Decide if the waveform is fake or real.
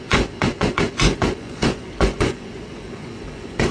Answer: fake